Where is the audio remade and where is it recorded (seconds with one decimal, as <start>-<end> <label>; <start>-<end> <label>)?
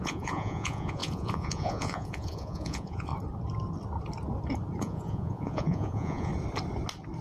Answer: 0.0-3.1 remade; 3.1-4.8 recorded; 4.8-6.3 remade; 6.3-7.2 recorded